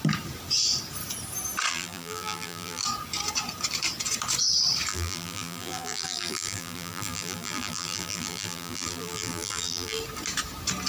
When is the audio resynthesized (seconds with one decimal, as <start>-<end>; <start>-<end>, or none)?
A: 1.7-2.8; 4.9-10.0